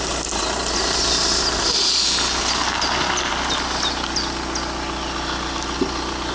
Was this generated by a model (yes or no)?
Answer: no